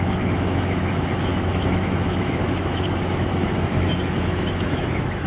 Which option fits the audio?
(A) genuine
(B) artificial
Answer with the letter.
B